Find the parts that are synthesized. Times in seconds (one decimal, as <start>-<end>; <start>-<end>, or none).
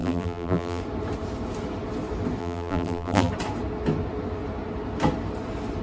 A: 0.0-0.8; 2.4-3.3